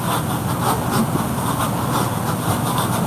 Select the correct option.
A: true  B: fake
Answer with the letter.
A